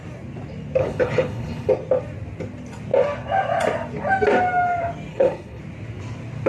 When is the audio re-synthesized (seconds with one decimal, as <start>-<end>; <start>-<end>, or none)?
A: 0.8-1.7; 5.1-5.6